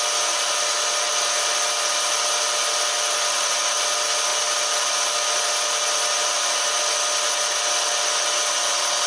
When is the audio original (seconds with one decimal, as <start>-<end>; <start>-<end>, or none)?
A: 0.0-9.1

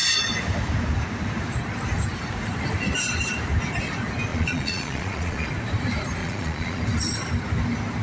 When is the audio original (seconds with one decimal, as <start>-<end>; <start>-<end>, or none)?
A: 0.0-4.3; 5.5-6.2; 6.8-8.0

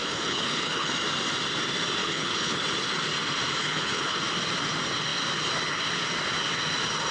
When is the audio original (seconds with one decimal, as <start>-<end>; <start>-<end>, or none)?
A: 0.9-2.0; 2.6-3.6; 4.2-7.1

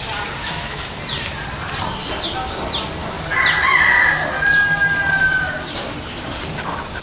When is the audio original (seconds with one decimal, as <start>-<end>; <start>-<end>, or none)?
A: 0.0-0.4; 1.0-7.0

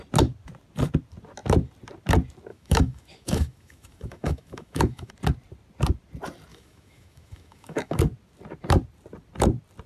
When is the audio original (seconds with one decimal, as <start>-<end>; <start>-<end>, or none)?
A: 0.0-2.5; 5.1-6.5; 8.0-9.9